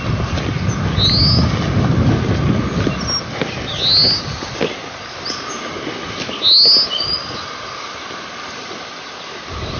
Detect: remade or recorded recorded